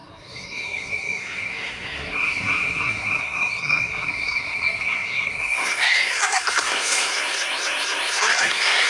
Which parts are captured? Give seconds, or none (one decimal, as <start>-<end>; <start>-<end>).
none